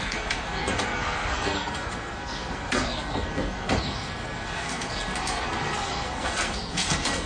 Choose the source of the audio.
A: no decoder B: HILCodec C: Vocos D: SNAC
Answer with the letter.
D